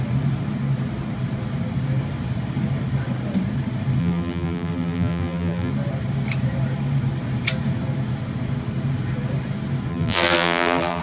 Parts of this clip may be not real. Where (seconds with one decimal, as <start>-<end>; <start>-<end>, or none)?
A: 4.0-5.7; 9.9-11.0